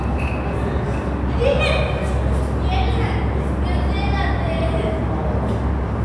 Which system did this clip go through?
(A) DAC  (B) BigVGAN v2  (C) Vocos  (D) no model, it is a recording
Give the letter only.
D